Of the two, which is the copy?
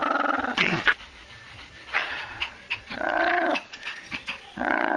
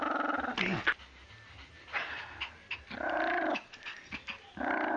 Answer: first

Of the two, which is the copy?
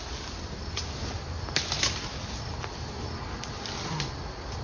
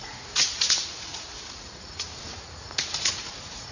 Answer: second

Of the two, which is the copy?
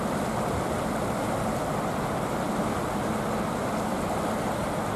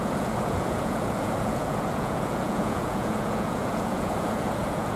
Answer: second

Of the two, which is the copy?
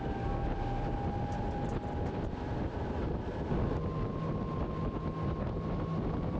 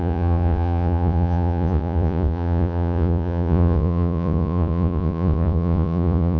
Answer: second